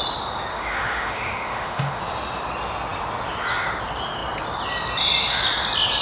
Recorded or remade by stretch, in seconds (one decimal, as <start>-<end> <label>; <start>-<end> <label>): 0.0-0.5 recorded; 0.5-2.0 remade; 2.0-6.0 recorded